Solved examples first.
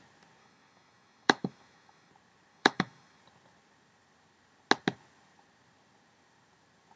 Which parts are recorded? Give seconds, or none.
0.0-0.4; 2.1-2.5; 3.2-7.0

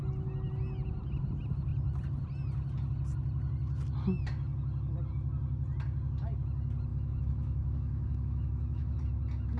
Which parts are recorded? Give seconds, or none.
0.0-6.9; 9.0-9.6

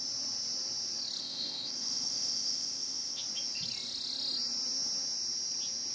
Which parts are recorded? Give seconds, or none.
0.0-1.2; 3.2-5.9

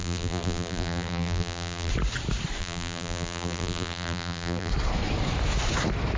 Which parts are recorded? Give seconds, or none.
1.9-2.6; 4.7-6.2

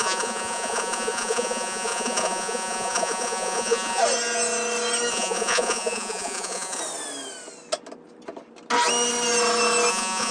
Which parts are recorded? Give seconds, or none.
4.0-5.1; 6.8-9.9

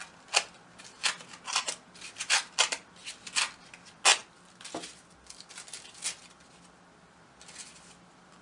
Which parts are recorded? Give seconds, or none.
0.0-8.4

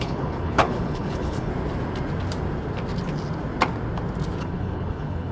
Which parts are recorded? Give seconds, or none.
1.5-4.4